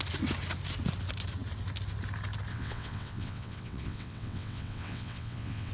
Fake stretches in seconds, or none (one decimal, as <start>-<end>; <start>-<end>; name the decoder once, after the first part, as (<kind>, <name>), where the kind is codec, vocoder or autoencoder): 2.5-5.7 (vocoder, WaveNeXt)

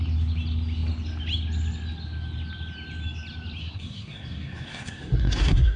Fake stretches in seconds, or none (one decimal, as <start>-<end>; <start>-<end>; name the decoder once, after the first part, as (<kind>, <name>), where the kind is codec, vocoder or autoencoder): 3.6-5.8 (codec, SNAC)

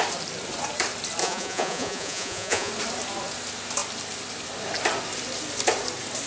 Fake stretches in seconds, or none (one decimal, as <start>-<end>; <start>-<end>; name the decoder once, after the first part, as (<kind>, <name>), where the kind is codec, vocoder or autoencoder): 1.2-2.7 (vocoder, Vocos)

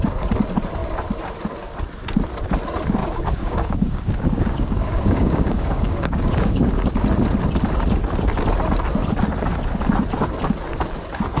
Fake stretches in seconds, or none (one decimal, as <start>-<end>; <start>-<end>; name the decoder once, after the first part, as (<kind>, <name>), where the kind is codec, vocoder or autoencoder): 3.0-6.9 (codec, DAC)

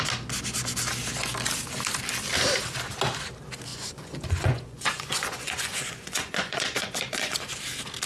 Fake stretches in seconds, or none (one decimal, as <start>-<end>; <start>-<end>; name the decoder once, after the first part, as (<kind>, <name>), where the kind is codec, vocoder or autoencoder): 3.7-7.4 (vocoder, Vocos)

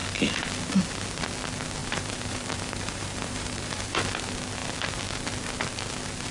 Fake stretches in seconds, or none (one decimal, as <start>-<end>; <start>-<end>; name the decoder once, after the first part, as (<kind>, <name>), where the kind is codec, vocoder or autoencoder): 1.8-4.0 (vocoder, BigVGAN v2)